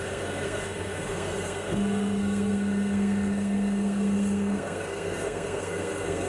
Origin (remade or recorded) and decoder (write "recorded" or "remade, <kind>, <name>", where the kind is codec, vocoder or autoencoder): remade, codec, SNAC